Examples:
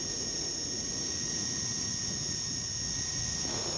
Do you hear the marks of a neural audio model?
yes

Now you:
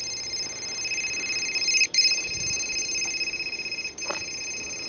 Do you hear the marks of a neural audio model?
no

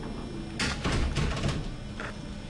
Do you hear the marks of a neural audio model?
no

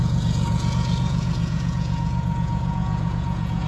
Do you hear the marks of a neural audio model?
yes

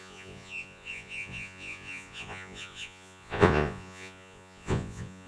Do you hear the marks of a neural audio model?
yes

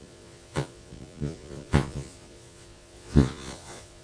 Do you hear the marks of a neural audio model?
yes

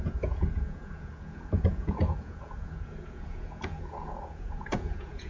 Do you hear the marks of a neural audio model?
yes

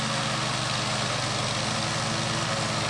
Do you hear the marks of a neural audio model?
no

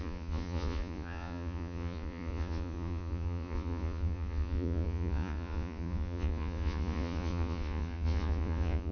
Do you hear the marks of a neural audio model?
yes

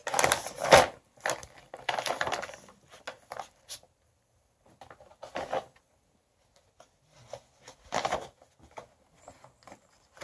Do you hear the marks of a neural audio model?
no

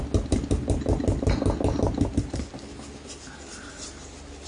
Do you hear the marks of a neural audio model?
no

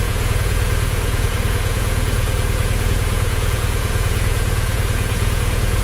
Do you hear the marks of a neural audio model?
yes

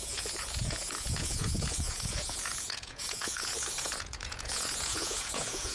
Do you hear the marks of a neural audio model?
yes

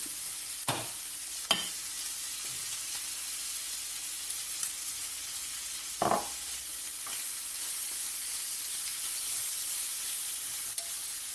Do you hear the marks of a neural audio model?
no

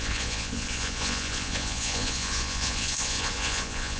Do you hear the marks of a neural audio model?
yes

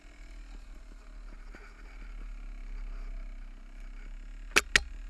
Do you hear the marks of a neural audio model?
no